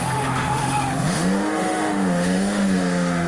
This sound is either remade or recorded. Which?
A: remade